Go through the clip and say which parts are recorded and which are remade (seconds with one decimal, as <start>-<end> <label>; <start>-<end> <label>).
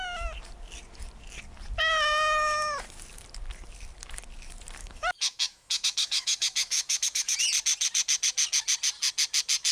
0.0-4.8 recorded; 4.8-7.4 remade; 7.4-9.7 recorded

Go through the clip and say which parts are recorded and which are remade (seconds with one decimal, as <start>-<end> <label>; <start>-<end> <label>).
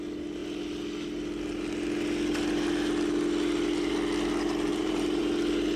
0.0-4.7 recorded; 4.7-5.2 remade; 5.2-5.8 recorded